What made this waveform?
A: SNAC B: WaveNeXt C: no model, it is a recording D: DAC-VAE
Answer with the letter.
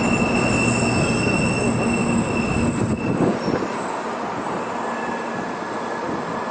C